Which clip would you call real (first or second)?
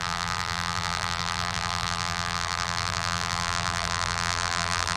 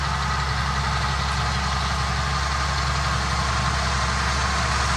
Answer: second